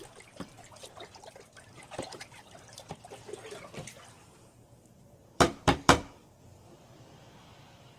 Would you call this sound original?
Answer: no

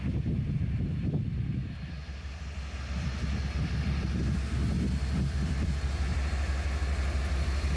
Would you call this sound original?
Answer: yes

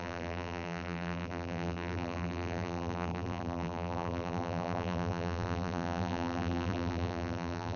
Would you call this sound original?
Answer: no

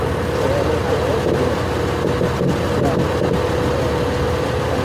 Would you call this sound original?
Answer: yes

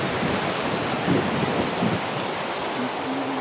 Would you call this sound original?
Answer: yes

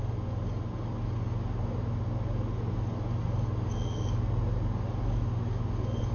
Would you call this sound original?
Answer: yes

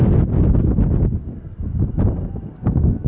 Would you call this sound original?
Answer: yes